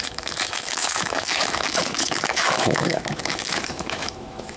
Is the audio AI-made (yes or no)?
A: yes